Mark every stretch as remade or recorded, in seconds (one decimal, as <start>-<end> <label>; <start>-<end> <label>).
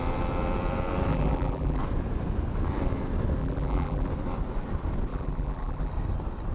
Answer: 0.0-1.1 recorded; 1.1-1.8 remade; 1.8-3.4 recorded; 3.4-4.1 remade; 4.1-5.1 recorded; 5.1-5.9 remade; 5.9-6.5 recorded